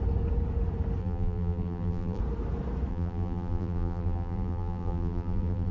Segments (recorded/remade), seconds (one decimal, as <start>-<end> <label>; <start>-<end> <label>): 0.0-1.0 recorded; 1.0-2.2 remade; 2.2-2.9 recorded; 2.9-5.7 remade